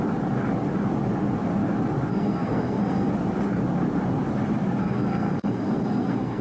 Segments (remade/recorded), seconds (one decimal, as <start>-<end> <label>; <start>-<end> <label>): 0.0-2.1 recorded; 2.1-3.1 remade; 3.1-4.8 recorded; 4.8-6.4 remade